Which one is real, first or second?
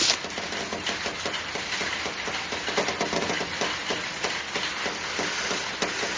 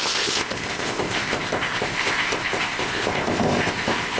first